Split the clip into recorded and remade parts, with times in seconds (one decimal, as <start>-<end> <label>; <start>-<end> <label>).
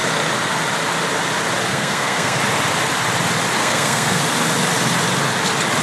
0.0-1.7 recorded; 1.7-2.4 remade; 2.4-3.6 recorded; 3.6-4.2 remade; 4.2-5.8 recorded